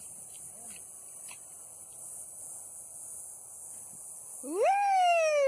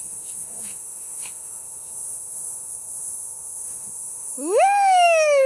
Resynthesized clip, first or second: second